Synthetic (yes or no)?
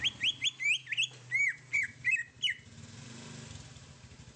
no